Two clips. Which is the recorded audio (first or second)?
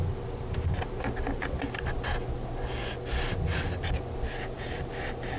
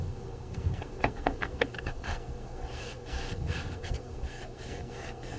first